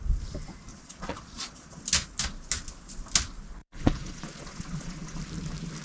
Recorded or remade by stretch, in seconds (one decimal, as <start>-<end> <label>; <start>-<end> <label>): 0.0-0.7 recorded; 0.7-1.8 remade; 1.8-3.6 recorded; 3.6-5.2 remade; 5.2-5.8 recorded